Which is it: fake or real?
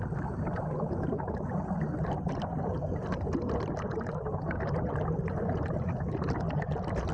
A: real